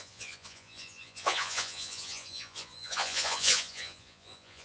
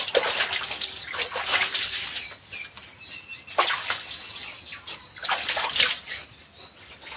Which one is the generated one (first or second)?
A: first